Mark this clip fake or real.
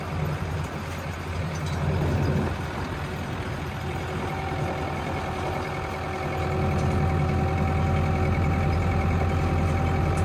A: real